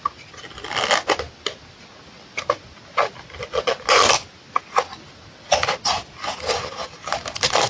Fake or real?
real